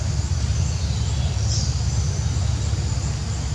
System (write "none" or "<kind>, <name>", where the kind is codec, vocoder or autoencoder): none